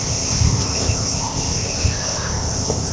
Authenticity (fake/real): fake